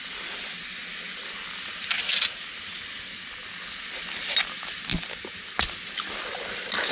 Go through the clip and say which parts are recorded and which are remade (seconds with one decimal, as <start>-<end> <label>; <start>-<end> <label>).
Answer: 0.0-6.9 recorded